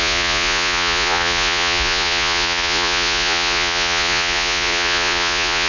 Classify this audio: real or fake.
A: fake